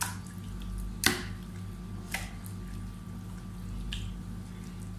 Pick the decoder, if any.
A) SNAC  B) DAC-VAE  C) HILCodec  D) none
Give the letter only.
D